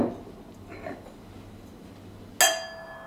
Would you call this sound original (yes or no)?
yes